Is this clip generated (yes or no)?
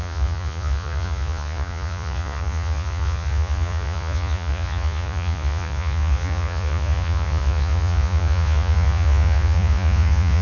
yes